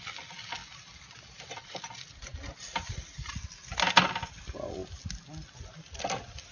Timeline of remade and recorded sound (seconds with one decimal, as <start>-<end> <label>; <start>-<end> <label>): 0.0-6.5 recorded